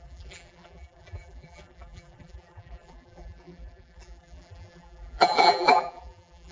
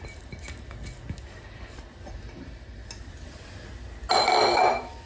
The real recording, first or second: second